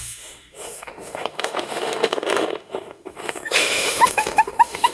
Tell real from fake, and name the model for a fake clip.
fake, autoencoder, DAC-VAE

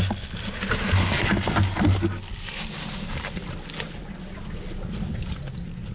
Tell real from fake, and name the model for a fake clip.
real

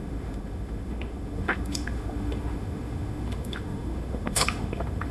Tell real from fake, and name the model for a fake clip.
fake, autoencoder, DAC-VAE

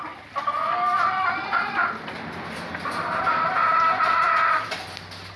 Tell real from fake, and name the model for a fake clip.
real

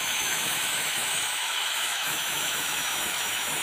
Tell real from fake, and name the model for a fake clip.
fake, autoencoder, DAC-VAE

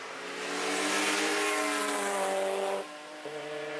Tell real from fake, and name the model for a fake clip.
real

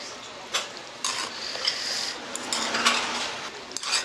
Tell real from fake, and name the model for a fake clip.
real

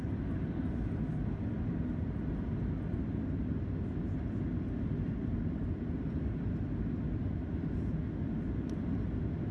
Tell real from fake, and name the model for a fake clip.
real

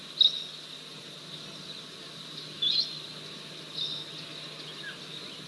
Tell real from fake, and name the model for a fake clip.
real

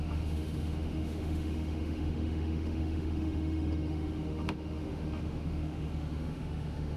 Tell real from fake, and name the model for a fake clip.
fake, autoencoder, DAC-VAE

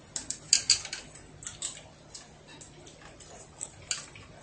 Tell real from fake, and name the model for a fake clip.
real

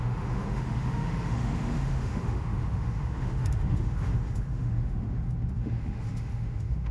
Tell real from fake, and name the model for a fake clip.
fake, autoencoder, DAC-VAE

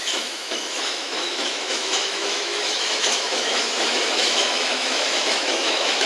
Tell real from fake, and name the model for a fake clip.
fake, autoencoder, DAC-VAE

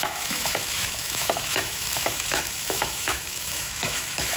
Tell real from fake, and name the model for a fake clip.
fake, autoencoder, DAC-VAE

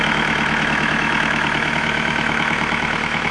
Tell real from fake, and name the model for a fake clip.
fake, autoencoder, DAC-VAE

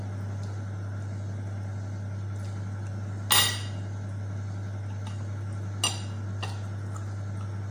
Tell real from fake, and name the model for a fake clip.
real